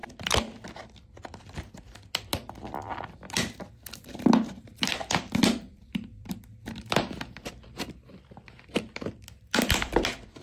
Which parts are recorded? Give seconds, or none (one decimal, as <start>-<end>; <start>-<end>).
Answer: 0.0-1.4